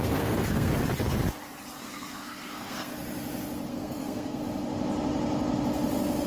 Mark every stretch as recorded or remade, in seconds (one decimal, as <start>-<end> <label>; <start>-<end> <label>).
0.0-0.7 remade; 0.7-1.8 recorded; 1.8-2.9 remade; 2.9-3.7 recorded; 3.7-4.4 remade; 4.4-6.3 recorded